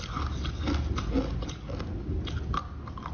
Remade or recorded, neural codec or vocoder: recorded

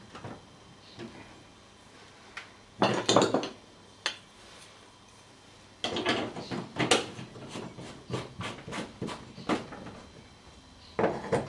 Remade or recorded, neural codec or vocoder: recorded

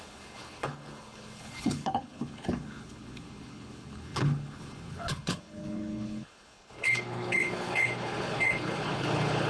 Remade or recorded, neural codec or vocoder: remade, codec, HILCodec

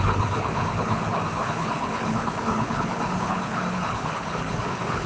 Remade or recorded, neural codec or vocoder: remade, codec, HILCodec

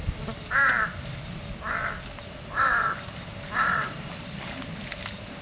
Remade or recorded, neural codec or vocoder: recorded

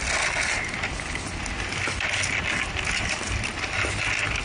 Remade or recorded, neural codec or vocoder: recorded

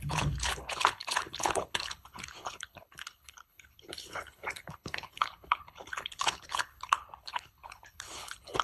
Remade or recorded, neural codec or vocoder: remade, codec, HILCodec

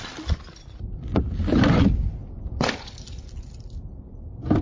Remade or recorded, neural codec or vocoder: recorded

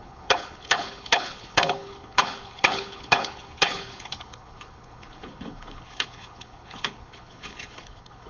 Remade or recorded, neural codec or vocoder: remade, codec, HILCodec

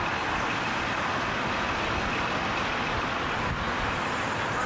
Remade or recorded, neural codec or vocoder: recorded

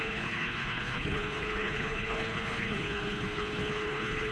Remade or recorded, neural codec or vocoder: remade, codec, HILCodec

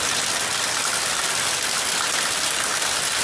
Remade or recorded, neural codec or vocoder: recorded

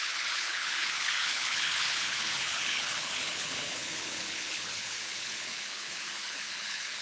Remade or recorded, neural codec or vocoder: remade, codec, HILCodec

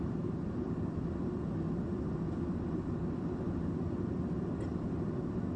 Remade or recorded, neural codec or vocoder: recorded